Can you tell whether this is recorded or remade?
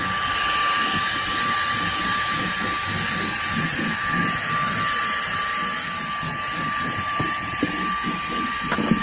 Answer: recorded